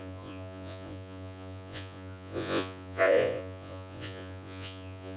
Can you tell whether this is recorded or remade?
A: remade